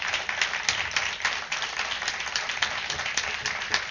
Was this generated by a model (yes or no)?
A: no